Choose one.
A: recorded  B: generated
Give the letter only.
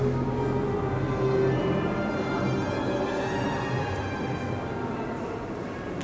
A